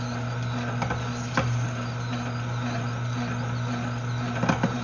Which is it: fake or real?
real